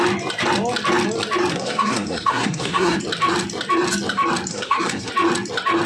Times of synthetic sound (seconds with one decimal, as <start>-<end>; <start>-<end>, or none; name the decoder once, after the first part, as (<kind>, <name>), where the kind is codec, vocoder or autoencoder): 1.5-3.0 (codec, SNAC); 4.5-5.1